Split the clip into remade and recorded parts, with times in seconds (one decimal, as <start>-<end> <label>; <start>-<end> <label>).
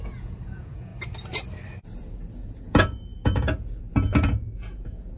0.0-0.9 remade; 0.9-2.5 recorded; 2.5-5.2 remade